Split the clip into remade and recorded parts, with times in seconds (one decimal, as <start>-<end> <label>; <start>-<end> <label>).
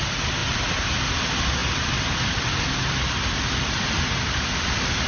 0.0-5.1 recorded